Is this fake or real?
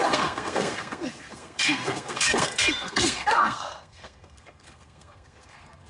fake